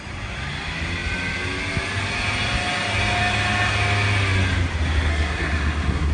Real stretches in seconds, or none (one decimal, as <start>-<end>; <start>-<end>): 0.0-5.1